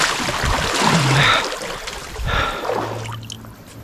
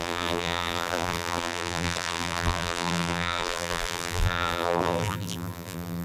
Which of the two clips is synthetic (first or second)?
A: second